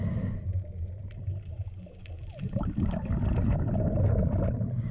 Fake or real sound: real